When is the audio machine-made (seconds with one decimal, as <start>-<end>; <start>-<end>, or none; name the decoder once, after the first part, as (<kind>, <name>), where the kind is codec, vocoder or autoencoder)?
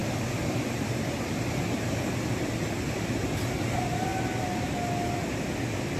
none